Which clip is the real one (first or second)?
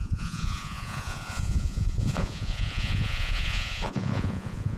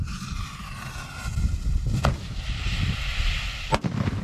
second